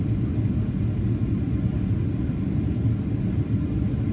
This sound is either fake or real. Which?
real